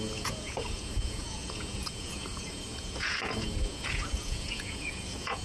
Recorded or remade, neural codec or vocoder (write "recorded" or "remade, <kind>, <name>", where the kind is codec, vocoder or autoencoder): remade, vocoder, Vocos